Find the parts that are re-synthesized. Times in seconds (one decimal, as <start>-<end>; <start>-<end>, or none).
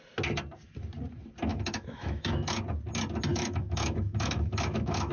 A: 1.5-2.6; 3.3-5.1